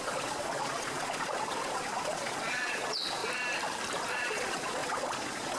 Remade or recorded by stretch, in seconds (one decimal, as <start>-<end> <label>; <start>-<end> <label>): 0.0-3.2 remade; 3.2-4.1 recorded; 4.1-5.6 remade